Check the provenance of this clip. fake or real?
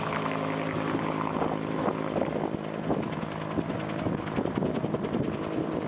real